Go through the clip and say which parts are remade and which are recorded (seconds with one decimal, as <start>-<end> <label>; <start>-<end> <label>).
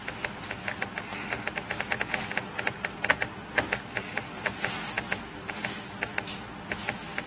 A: 0.0-7.3 recorded